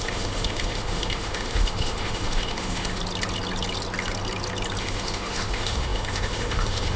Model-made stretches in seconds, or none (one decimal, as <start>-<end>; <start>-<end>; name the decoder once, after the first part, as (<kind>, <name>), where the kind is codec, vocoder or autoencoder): 0.0-3.0 (autoencoder, DAC-VAE); 4.8-7.0